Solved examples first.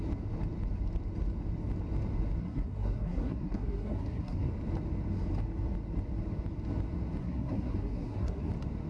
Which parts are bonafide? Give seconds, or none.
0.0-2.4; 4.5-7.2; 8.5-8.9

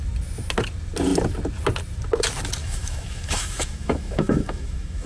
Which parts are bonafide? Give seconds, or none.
0.0-2.6

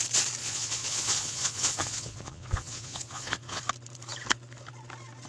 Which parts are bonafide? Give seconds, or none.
0.0-0.4; 3.6-5.3

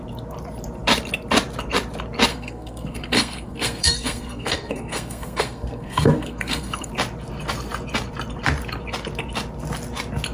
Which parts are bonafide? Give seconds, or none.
0.0-2.3; 6.9-10.3

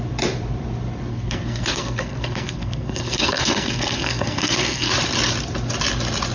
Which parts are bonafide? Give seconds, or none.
0.0-1.1; 4.9-6.3